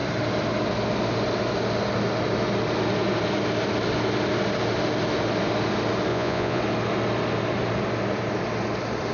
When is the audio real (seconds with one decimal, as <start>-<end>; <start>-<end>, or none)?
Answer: 0.0-6.1; 6.6-9.1